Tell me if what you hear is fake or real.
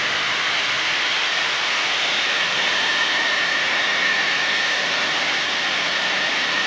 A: real